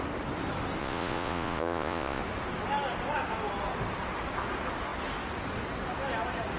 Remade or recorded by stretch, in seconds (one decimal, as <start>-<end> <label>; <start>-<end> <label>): 0.0-0.8 recorded; 0.8-2.2 remade; 2.2-6.6 recorded